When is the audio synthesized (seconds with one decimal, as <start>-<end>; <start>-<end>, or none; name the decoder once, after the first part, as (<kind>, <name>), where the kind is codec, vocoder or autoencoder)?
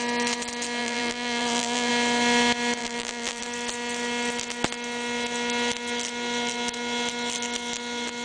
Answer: 0.8-1.9 (vocoder, BigVGAN v2); 2.8-3.4